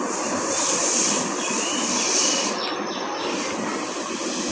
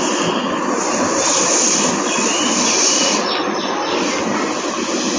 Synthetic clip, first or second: first